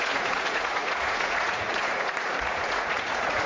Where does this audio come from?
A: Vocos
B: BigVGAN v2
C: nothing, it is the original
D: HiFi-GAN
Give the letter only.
A